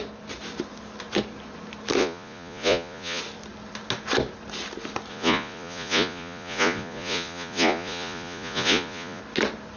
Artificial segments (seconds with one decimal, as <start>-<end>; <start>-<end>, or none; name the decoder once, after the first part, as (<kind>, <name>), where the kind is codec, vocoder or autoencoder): 2.0-3.2 (vocoder, Vocos); 5.1-9.2